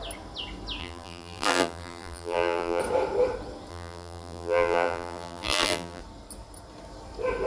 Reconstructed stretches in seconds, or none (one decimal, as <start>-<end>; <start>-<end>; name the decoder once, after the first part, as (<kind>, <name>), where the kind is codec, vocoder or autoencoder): 0.8-2.8 (vocoder, BigVGAN v2); 3.7-6.0